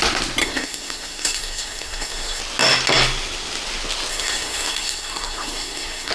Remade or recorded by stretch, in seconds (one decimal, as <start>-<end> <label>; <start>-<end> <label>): 0.0-0.4 recorded; 0.4-2.4 remade; 2.4-4.1 recorded; 4.1-6.1 remade